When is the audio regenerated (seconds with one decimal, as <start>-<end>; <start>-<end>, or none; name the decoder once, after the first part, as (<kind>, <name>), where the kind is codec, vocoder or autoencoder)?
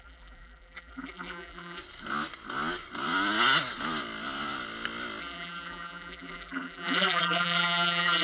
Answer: 0.0-1.8 (vocoder, BigVGAN v2); 5.2-8.2